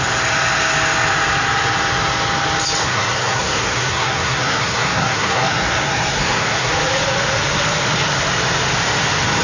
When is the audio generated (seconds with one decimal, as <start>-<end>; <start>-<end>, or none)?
2.8-6.7